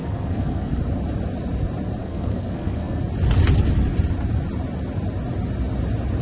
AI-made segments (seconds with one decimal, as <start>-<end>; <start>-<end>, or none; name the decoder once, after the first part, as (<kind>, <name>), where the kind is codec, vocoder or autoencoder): 0.0-0.8 (codec, SNAC); 2.0-3.0

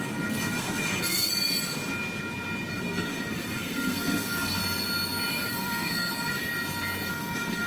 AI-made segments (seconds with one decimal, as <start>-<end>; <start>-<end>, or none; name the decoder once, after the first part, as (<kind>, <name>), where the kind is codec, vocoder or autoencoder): 0.0-1.3 (codec, SNAC); 2.7-4.6; 5.3-6.5; 7.1-7.7